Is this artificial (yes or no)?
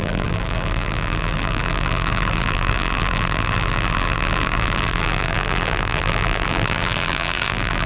yes